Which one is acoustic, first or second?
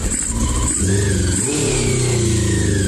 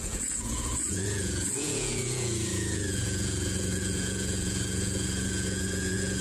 first